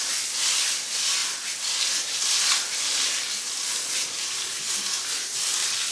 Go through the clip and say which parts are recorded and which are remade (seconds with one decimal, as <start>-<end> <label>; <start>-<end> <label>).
0.0-5.9 recorded